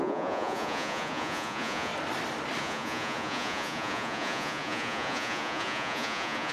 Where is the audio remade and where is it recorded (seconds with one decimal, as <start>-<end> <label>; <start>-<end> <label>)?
0.0-1.9 remade; 1.9-2.6 recorded; 2.6-6.5 remade